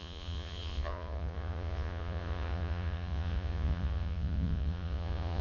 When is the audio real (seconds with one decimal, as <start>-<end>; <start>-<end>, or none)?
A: none